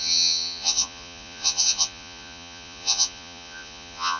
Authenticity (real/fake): fake